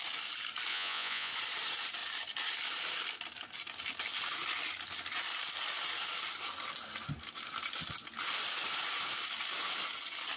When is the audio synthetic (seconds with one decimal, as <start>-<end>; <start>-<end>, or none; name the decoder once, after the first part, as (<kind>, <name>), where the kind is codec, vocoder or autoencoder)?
0.7-1.3 (vocoder, Vocos)